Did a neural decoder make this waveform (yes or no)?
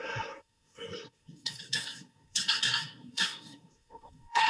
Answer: yes